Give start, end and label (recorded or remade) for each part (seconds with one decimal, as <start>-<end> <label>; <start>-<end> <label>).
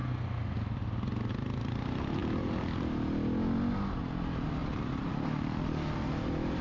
0.0-6.6 recorded